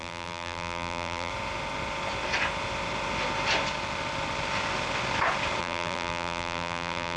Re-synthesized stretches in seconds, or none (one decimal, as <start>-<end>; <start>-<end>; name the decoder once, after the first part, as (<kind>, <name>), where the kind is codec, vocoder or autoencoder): 0.0-1.3 (vocoder, BigVGAN v2); 5.6-7.2